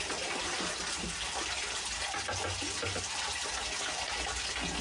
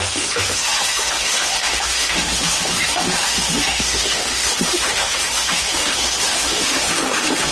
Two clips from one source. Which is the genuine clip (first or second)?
first